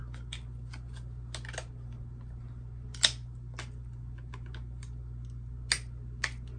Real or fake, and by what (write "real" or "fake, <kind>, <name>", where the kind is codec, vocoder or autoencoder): real